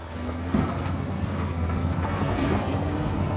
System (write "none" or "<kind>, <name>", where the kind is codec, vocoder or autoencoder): codec, SNAC